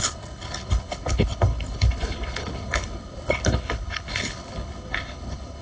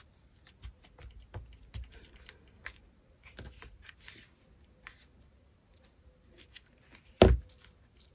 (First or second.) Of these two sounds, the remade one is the first